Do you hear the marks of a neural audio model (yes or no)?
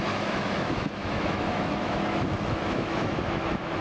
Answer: yes